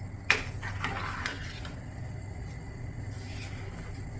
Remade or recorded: recorded